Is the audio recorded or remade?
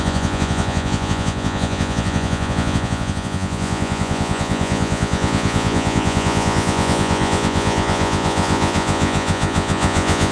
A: remade